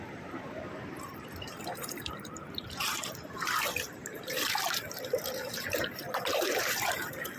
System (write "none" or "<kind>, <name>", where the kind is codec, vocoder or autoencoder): vocoder, BigVGAN v2